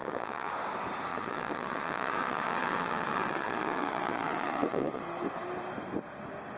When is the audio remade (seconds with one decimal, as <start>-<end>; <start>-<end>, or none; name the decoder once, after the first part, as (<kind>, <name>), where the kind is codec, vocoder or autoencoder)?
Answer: 0.0-0.5 (vocoder, Vocos); 1.1-5.0